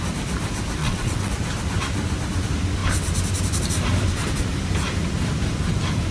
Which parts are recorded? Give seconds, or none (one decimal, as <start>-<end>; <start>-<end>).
0.0-0.8; 1.3-6.1